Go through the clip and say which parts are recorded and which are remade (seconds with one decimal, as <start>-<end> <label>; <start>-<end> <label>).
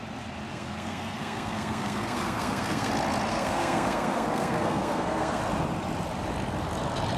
0.0-0.5 recorded; 0.5-2.9 remade; 2.9-3.3 recorded; 3.3-5.4 remade; 5.4-7.2 recorded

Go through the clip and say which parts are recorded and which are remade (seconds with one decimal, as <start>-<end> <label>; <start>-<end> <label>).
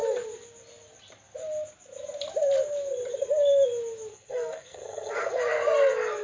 0.0-4.1 recorded; 4.1-5.3 remade; 5.3-6.2 recorded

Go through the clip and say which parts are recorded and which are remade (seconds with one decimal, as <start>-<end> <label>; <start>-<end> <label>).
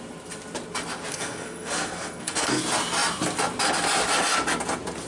0.0-1.1 recorded; 1.1-2.6 remade; 2.6-5.1 recorded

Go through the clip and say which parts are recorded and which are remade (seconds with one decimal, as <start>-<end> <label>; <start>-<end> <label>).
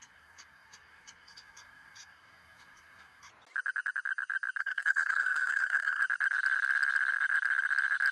0.0-3.3 remade; 3.3-4.6 recorded; 4.6-6.0 remade; 6.0-8.1 recorded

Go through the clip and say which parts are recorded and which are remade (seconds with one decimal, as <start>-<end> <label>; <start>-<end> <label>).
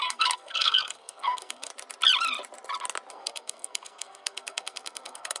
0.0-1.7 remade; 1.7-3.1 recorded; 3.1-5.4 remade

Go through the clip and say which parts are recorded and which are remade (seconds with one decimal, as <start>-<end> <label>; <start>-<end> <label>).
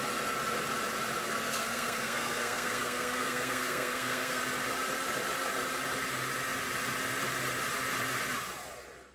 0.0-1.2 recorded; 1.2-4.4 remade; 4.4-9.1 recorded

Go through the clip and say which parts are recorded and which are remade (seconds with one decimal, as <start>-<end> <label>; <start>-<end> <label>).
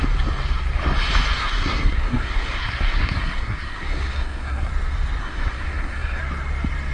0.0-1.4 recorded; 1.4-4.7 remade; 4.7-5.2 recorded; 5.2-6.2 remade; 6.2-6.9 recorded